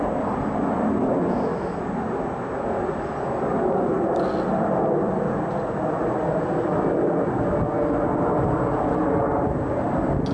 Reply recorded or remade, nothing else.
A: recorded